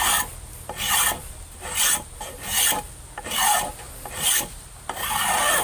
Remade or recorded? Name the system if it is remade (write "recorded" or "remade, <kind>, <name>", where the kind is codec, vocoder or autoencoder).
recorded